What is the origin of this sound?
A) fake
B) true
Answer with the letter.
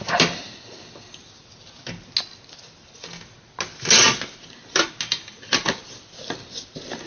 B